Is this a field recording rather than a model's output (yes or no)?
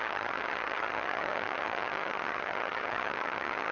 no